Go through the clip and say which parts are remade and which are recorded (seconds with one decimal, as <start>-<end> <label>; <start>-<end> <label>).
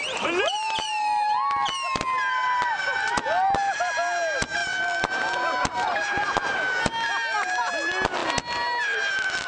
0.0-9.5 recorded